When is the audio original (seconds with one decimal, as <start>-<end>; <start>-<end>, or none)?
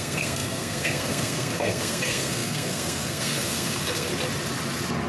4.1-5.1